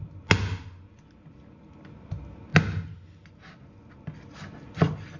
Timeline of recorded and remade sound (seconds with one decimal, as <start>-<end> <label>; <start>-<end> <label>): 0.0-5.2 recorded